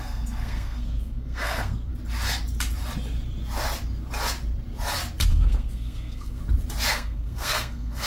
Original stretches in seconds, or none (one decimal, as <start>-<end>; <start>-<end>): 1.9-5.3; 6.4-6.9